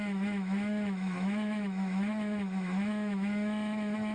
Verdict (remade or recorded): remade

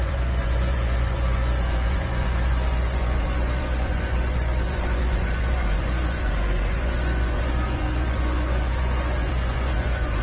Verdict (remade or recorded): remade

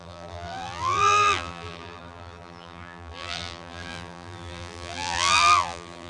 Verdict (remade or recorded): remade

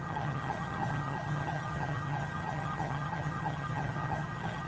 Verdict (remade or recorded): remade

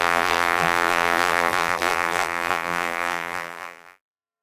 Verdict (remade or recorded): remade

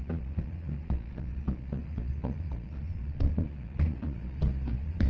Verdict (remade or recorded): remade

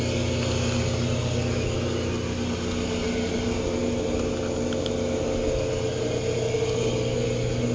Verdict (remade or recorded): recorded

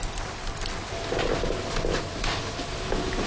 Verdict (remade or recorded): recorded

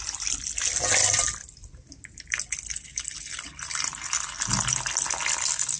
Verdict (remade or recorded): recorded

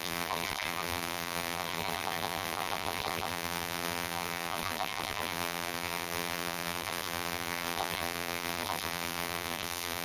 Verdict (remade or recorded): remade